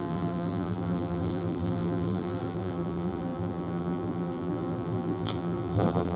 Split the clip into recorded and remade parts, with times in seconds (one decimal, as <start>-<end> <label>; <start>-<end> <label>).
0.0-6.2 remade